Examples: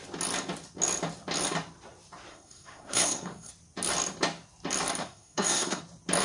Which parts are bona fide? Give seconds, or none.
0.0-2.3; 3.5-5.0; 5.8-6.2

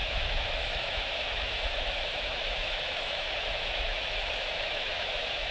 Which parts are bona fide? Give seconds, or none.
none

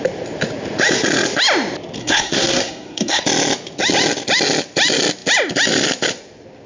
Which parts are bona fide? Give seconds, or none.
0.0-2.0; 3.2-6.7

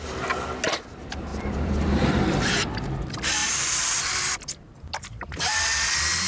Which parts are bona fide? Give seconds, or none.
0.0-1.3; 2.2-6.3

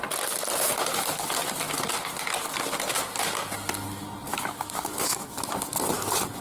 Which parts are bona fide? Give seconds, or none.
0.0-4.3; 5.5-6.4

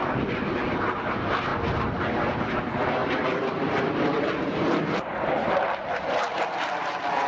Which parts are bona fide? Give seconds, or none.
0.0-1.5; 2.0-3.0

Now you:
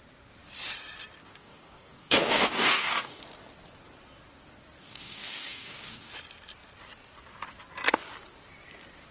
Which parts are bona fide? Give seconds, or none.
0.0-1.2; 3.2-4.8; 6.1-9.1